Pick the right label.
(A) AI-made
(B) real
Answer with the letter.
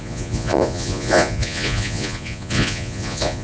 A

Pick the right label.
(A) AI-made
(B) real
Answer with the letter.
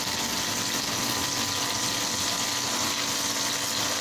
B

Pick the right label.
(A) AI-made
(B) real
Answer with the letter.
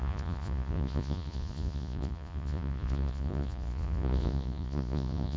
A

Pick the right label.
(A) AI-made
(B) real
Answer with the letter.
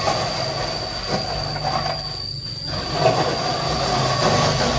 B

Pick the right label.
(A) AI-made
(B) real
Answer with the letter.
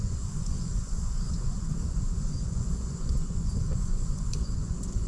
A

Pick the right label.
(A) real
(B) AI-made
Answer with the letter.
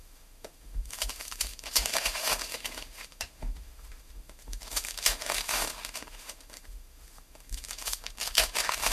B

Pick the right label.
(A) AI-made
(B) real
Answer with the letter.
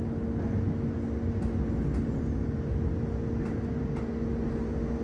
B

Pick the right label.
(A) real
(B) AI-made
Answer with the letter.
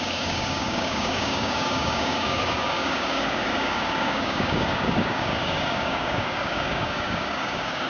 B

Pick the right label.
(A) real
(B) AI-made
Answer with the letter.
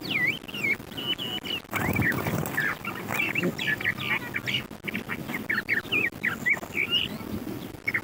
A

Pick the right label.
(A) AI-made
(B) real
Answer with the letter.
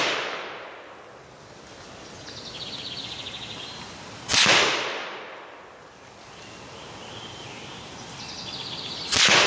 B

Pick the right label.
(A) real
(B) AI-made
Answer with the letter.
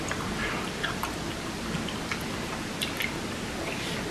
A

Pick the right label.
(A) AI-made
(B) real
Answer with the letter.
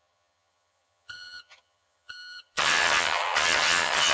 A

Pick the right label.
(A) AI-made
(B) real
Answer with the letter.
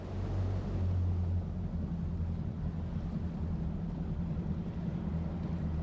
B